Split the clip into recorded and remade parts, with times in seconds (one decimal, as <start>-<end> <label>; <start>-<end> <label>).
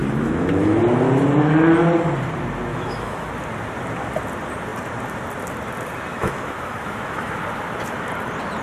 0.0-0.8 remade; 0.8-2.7 recorded; 2.7-3.3 remade; 3.3-6.1 recorded; 6.1-7.3 remade; 7.3-8.6 recorded